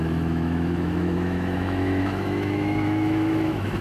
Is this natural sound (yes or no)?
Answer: no